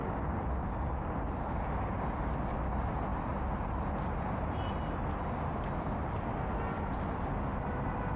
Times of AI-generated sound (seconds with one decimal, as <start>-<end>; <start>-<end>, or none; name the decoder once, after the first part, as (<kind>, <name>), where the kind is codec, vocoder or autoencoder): 0.0-0.5 (codec, DAC)